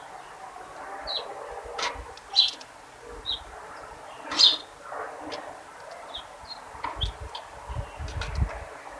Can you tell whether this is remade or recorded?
recorded